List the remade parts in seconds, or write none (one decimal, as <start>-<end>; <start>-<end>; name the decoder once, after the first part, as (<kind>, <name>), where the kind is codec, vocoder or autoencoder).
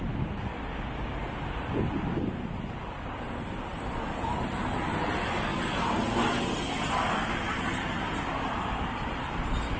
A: none